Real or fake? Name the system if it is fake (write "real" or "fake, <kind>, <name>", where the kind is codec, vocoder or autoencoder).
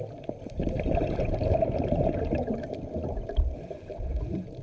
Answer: real